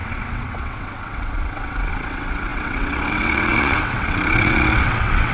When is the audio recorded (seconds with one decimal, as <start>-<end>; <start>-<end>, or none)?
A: none